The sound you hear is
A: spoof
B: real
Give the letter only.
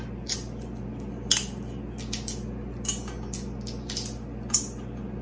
B